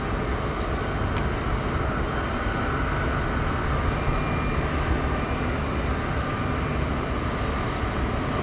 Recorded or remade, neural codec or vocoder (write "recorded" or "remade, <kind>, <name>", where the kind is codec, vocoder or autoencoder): recorded